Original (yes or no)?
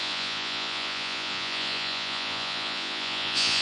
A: no